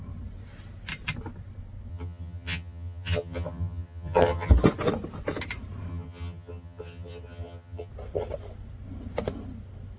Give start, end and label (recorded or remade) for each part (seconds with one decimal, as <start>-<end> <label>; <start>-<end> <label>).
0.0-1.9 recorded; 1.9-4.5 remade; 4.5-5.9 recorded; 5.9-7.9 remade; 7.9-10.0 recorded